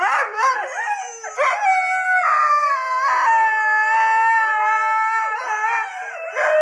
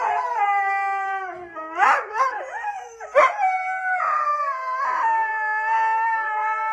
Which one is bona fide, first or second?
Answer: first